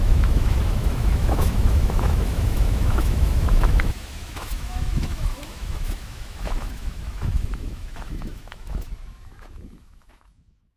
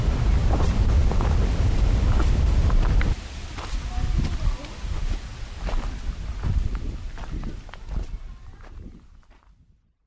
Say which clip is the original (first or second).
second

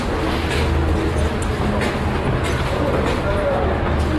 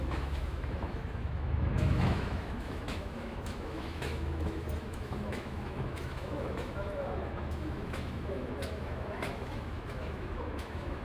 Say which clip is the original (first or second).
first